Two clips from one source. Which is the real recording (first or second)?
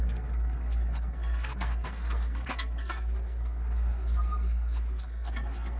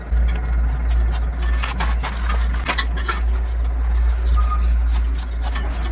second